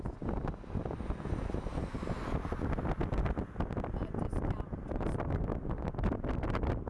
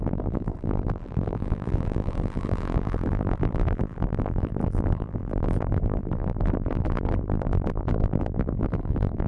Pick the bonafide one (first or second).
first